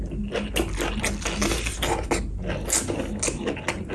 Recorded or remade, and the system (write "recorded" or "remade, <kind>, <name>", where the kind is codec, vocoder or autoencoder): recorded